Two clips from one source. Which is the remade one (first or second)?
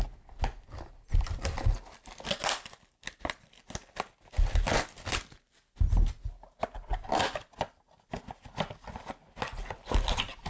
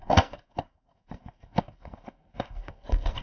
second